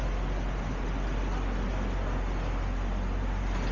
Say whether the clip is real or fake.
real